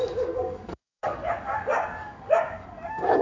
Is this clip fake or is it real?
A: fake